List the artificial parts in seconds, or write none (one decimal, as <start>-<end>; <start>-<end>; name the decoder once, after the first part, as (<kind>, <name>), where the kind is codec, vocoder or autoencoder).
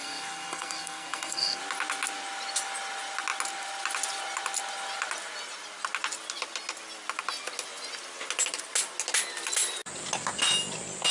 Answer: 0.0-1.6 (codec, SNAC)